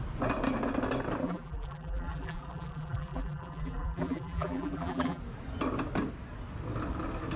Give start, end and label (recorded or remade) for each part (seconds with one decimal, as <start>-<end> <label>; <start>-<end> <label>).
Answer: 0.0-1.2 recorded; 1.2-5.2 remade; 5.2-7.4 recorded